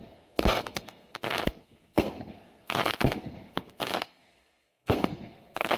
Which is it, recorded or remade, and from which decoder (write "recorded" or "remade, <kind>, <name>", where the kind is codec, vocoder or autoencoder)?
remade, codec, SNAC